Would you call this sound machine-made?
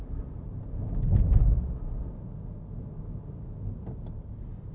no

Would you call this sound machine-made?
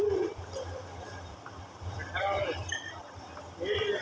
yes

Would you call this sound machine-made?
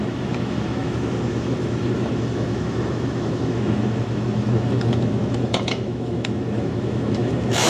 yes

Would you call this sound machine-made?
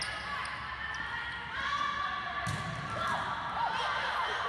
no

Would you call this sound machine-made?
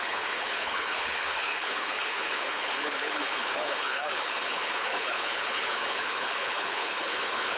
yes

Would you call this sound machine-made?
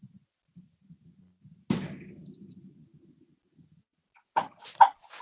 no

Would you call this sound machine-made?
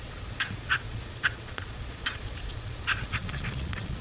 yes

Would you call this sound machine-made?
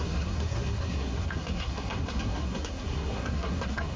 yes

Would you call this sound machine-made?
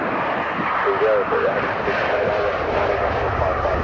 no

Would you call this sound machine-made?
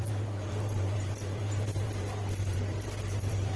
yes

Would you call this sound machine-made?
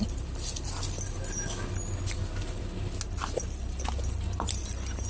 no